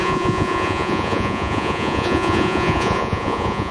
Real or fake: fake